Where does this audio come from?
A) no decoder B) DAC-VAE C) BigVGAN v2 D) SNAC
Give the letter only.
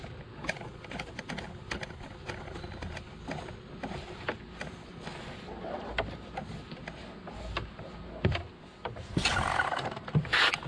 A